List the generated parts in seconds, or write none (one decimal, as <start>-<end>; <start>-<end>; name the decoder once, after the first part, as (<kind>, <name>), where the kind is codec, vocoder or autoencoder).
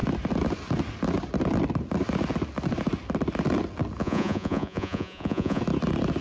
4.0-5.6 (vocoder, Vocos)